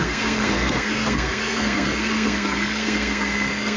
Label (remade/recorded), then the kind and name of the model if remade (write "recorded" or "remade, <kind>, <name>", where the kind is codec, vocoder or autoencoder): remade, codec, SNAC